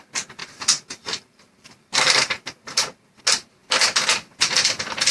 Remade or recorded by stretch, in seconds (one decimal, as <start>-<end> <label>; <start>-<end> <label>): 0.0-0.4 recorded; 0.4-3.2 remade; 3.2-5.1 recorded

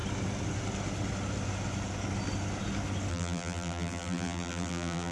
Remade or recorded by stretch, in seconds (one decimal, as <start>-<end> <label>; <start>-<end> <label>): 0.0-3.1 recorded; 3.1-5.1 remade

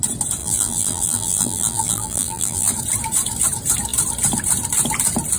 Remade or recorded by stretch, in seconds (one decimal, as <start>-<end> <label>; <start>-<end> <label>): 0.0-0.4 recorded; 0.4-2.7 remade; 2.7-5.4 recorded